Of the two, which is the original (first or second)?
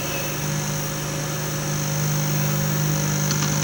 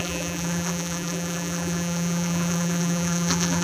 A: first